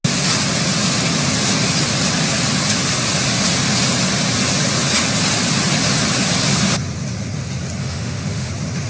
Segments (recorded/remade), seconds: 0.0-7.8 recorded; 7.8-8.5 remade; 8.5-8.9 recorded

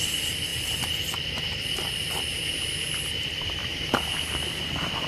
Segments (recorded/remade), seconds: 0.0-5.1 recorded

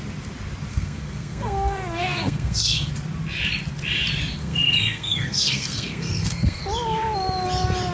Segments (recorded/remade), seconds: 0.0-0.7 recorded; 0.7-2.9 remade; 2.9-4.4 recorded; 4.4-6.6 remade; 6.6-7.9 recorded

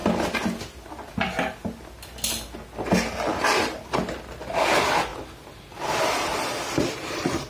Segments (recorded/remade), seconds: 0.0-4.2 recorded; 4.2-5.1 remade; 5.1-5.8 recorded; 5.8-7.5 remade